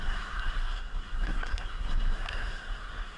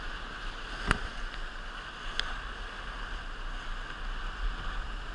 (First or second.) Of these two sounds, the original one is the second